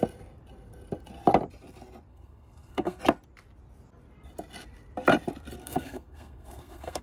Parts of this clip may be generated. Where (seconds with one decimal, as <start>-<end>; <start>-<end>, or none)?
2.1-3.0; 5.6-7.0